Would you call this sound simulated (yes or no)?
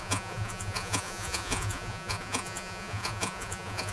yes